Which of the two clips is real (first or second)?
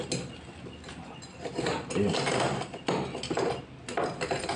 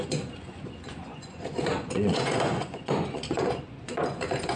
first